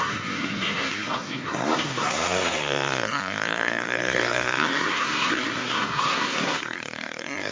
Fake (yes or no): yes